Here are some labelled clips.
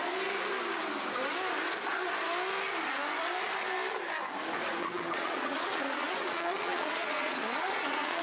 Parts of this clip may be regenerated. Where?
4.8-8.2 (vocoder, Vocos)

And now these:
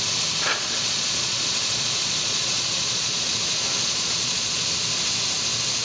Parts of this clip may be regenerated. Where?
0.5-3.3 (vocoder, Vocos); 3.8-4.6